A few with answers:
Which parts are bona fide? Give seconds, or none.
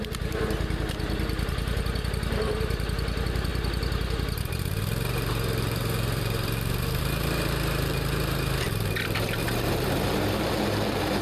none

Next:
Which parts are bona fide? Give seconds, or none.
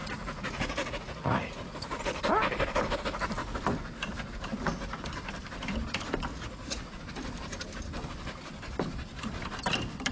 2.0-6.3; 7.0-10.1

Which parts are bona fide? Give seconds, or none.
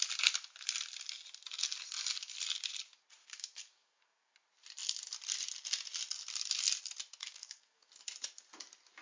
0.0-3.2; 4.3-7.2; 7.9-9.0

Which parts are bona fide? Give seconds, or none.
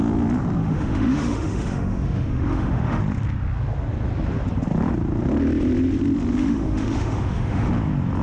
0.0-0.6; 3.0-6.4; 7.7-8.2